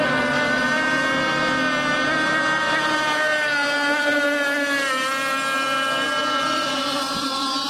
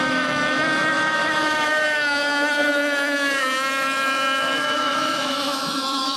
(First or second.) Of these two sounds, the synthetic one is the second